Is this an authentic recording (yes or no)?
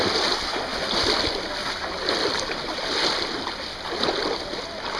yes